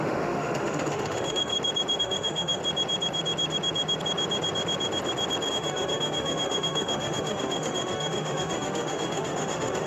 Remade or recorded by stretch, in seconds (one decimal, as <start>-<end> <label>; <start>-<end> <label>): 0.0-1.5 remade; 1.5-2.0 recorded; 2.0-2.6 remade; 2.6-5.5 recorded; 5.5-9.9 remade